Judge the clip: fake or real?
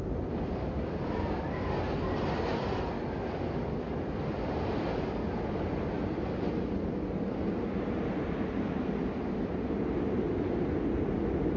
real